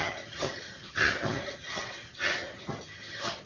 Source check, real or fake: fake